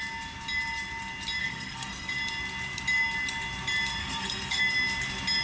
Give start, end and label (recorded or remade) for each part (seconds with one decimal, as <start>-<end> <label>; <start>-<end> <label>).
0.0-1.4 recorded; 1.4-2.1 remade; 2.1-4.0 recorded; 4.0-4.6 remade; 4.6-5.4 recorded